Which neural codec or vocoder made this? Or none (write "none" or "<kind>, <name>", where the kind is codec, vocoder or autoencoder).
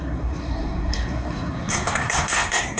codec, SNAC